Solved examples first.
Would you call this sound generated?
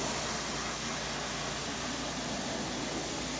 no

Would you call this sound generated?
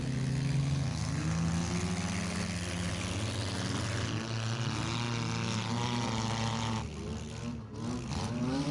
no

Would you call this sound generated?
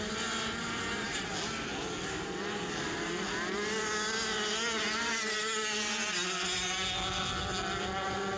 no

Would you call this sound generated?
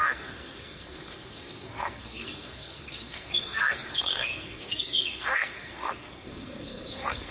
yes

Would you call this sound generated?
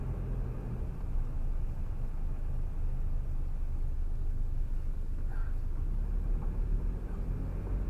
no